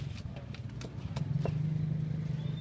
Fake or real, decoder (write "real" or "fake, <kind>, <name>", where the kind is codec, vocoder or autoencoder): real